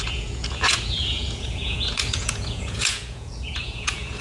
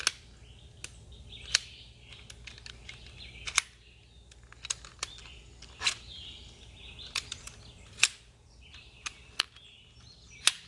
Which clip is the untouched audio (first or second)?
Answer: second